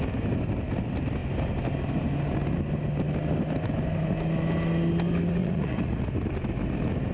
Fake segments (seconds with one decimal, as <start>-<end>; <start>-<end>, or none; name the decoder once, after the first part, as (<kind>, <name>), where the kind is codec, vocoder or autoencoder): 5.4-6.0 (vocoder, Vocos)

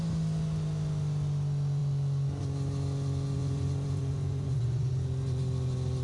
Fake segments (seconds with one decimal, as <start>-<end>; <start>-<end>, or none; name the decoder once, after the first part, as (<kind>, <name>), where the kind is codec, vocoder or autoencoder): 3.4-4.9 (vocoder, Vocos)

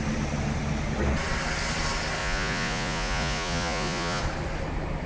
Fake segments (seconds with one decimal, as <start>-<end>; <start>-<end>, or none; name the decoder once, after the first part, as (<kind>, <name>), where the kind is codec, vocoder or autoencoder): 2.2-4.2 (vocoder, Vocos)

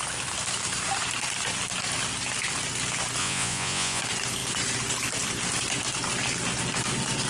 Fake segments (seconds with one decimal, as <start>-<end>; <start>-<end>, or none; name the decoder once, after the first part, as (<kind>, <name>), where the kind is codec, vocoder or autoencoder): 3.2-4.0 (vocoder, Vocos)

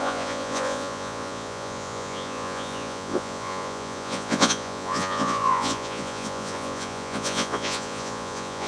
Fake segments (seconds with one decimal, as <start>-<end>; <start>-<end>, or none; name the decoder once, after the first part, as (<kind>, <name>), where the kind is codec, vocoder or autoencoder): 0.0-8.7 (vocoder, Vocos)

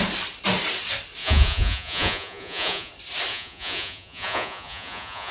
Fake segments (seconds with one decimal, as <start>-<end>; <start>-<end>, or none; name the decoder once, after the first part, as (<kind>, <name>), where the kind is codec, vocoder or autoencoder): 1.2-2.9 (vocoder, Vocos); 3.3-5.3